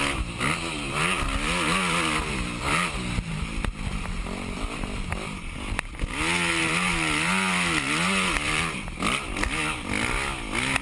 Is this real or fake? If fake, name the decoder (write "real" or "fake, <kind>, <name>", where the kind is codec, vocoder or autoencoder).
real